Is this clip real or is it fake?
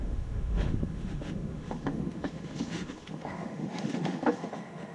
fake